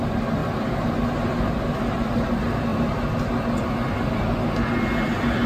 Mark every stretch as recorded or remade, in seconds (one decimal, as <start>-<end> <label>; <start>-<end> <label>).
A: 0.0-5.5 recorded